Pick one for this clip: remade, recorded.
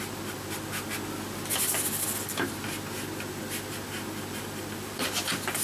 recorded